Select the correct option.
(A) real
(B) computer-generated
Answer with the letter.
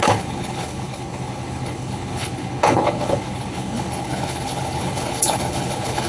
B